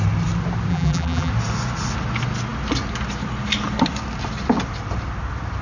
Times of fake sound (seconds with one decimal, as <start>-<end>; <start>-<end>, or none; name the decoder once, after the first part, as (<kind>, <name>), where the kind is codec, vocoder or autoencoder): 0.7-1.3 (vocoder, BigVGAN v2)